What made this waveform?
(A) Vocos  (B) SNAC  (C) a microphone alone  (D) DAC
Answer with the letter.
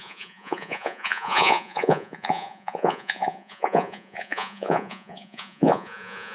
A